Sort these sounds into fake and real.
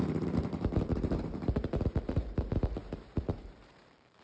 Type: fake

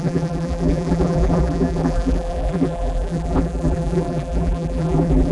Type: fake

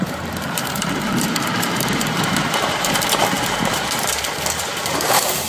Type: fake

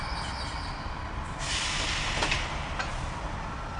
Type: real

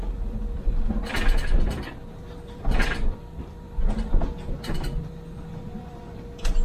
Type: fake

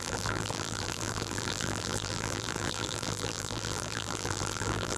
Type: fake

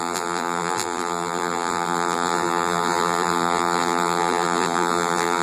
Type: fake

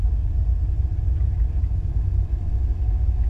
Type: real